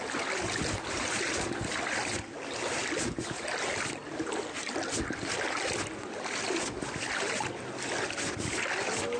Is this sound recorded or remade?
recorded